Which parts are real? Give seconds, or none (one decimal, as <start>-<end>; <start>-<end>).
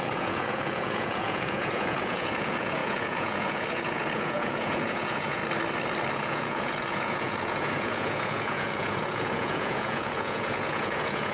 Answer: 5.4-6.1